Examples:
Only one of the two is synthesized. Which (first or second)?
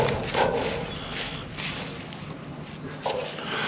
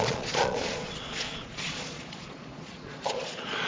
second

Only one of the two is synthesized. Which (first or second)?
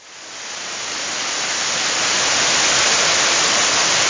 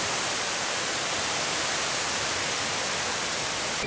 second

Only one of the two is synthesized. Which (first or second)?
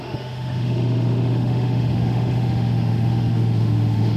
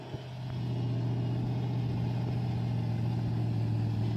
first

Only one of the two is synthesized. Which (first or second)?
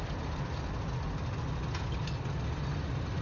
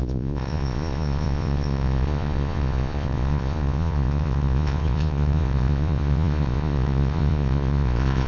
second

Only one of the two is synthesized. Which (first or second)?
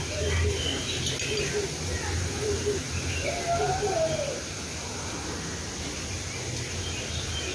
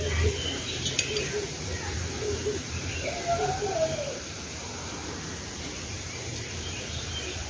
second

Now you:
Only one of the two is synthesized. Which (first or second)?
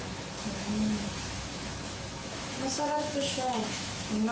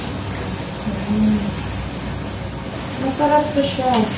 first